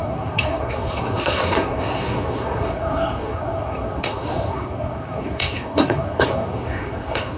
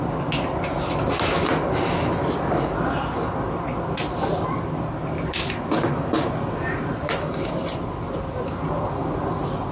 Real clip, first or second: second